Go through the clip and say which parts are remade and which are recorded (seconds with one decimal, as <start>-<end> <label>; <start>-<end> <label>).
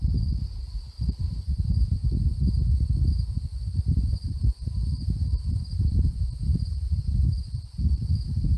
0.0-2.0 remade; 2.0-4.0 recorded; 4.0-8.6 remade